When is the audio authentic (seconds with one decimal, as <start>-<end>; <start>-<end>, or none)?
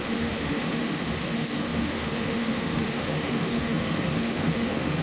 none